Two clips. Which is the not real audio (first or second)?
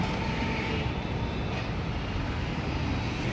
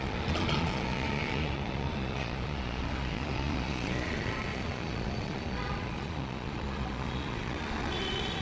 second